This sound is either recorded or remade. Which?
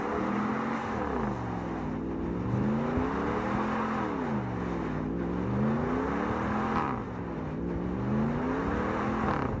recorded